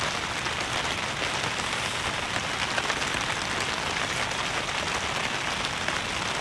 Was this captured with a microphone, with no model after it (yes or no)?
yes